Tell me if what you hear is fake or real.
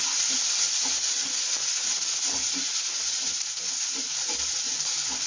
real